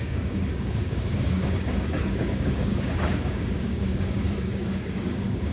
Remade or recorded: remade